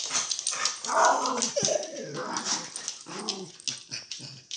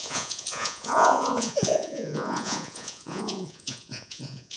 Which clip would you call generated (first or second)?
second